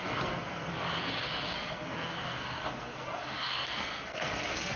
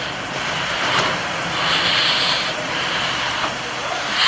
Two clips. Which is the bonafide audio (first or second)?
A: second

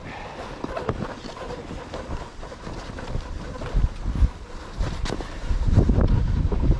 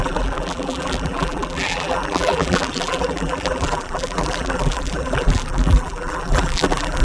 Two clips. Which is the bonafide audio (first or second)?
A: first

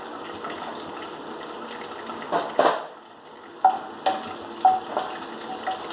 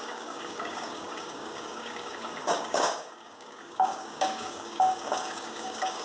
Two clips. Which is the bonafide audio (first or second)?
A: first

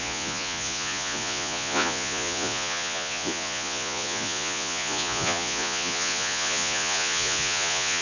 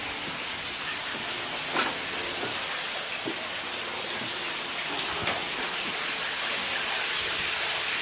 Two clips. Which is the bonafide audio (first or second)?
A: second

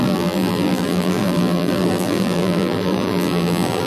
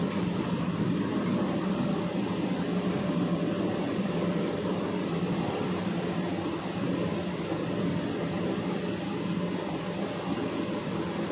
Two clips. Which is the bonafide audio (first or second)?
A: second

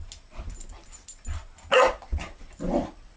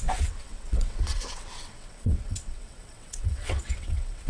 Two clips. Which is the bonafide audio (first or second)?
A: first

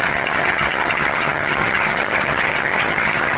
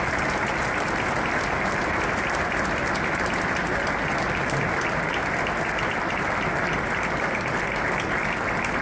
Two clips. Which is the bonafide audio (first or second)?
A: second